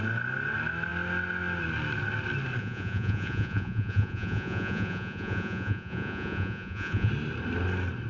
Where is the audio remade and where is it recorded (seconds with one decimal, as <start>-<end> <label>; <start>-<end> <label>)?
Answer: 0.0-2.6 recorded; 2.6-7.1 remade; 7.1-8.1 recorded